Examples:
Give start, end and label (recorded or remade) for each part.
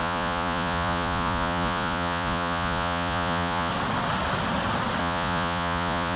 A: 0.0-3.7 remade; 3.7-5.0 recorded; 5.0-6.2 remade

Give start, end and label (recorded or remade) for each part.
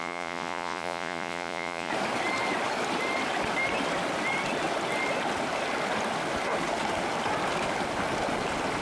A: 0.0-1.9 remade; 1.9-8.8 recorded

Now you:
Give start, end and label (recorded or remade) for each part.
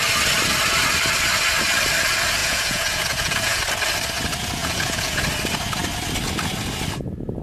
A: 0.0-2.4 recorded; 2.4-3.6 remade; 3.6-4.6 recorded; 4.6-5.2 remade; 5.2-7.4 recorded